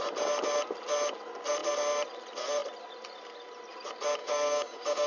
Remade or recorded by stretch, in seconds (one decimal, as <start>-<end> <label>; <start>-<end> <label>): 0.0-4.2 recorded; 4.2-5.1 remade